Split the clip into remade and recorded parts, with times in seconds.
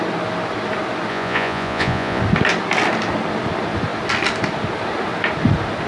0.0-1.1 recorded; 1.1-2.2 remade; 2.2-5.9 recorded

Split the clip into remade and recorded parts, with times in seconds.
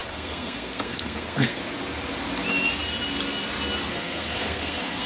0.0-1.6 remade; 1.6-3.9 recorded; 3.9-5.1 remade